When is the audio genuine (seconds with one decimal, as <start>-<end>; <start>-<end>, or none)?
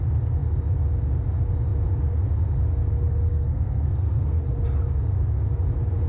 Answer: 0.0-3.3; 4.4-6.1